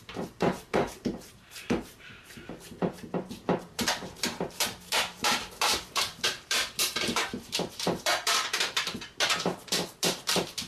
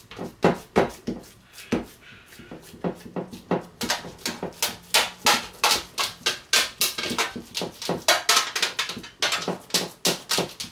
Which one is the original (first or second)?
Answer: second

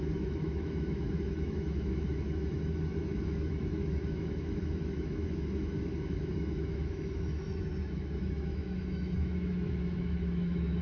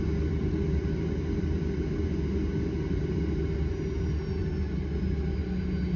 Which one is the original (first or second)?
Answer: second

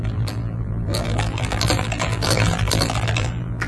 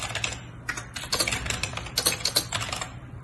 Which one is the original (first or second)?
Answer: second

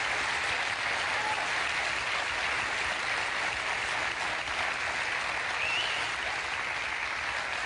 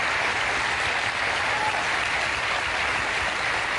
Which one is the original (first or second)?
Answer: first